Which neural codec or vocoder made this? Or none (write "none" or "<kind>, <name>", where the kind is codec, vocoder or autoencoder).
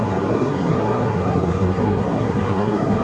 codec, SNAC